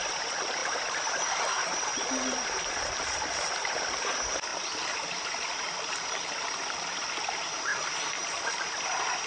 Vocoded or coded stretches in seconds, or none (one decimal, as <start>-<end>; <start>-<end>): 4.5-7.2; 7.7-9.3

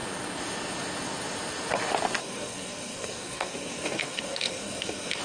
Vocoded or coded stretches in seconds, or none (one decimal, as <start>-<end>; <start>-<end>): 2.2-5.2